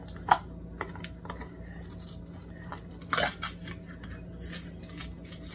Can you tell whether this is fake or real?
real